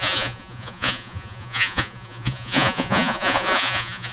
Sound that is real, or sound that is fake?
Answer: fake